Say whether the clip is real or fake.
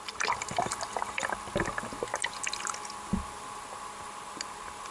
real